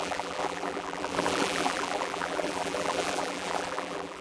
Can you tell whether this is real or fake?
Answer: fake